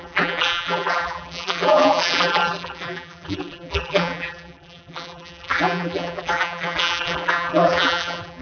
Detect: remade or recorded remade